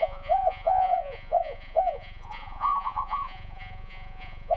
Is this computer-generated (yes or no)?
yes